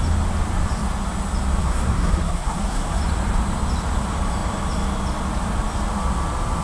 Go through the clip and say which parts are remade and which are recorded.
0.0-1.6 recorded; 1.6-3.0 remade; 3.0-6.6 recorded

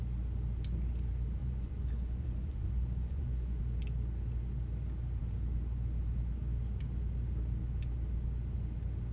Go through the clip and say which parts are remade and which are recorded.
0.0-1.4 recorded; 1.4-3.6 remade; 3.6-9.1 recorded

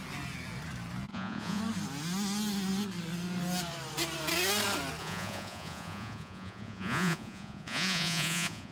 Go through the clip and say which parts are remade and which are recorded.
0.0-1.1 recorded; 1.1-1.6 remade; 1.6-5.0 recorded; 5.0-8.7 remade

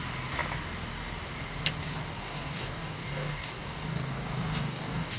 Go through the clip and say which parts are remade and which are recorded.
0.0-2.1 recorded; 2.1-5.2 remade

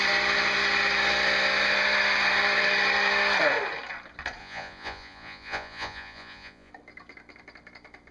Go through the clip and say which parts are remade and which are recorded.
0.0-4.4 recorded; 4.4-6.7 remade; 6.7-8.1 recorded

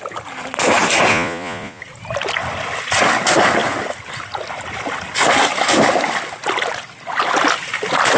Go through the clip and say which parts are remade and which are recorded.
0.0-1.1 recorded; 1.1-1.8 remade; 1.8-8.2 recorded